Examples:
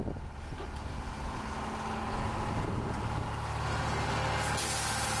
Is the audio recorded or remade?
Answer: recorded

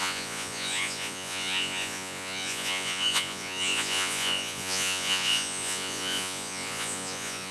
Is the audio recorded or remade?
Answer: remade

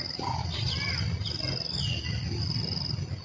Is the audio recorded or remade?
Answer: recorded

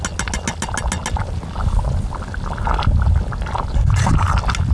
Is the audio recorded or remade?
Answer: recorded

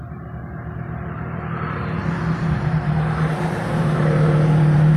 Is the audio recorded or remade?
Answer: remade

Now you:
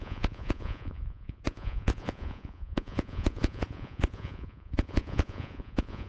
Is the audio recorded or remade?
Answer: remade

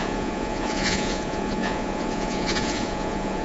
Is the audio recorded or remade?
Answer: remade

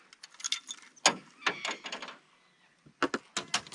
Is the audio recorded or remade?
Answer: recorded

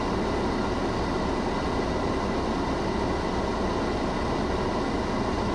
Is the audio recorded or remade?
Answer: recorded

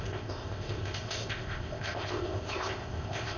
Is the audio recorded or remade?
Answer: remade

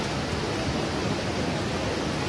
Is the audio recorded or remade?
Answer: recorded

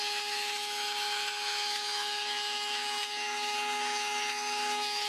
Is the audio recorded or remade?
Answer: remade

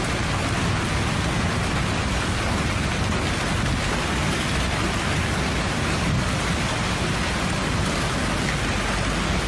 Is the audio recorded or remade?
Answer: recorded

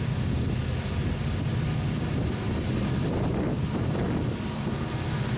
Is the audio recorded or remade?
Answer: recorded